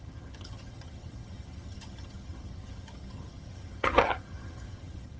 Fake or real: fake